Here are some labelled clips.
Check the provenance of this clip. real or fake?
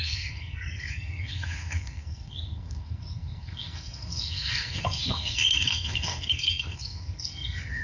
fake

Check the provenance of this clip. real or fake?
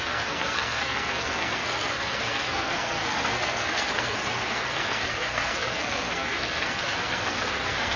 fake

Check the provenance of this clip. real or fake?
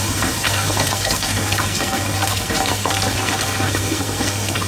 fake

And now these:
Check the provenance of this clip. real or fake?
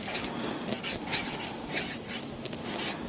real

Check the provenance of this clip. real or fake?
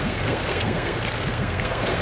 fake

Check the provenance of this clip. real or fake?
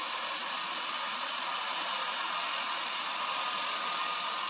real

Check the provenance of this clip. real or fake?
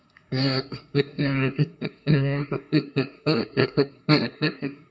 fake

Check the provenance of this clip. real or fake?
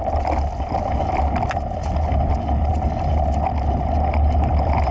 real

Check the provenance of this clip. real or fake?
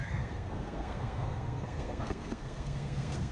fake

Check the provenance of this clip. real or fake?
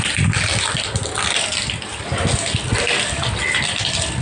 real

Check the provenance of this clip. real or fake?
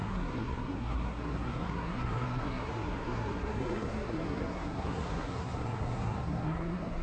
fake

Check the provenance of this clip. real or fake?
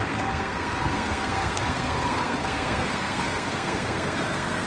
fake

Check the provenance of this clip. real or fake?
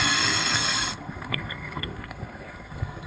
fake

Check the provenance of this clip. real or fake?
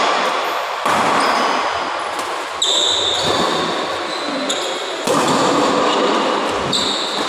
real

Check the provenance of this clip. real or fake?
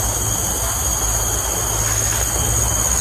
real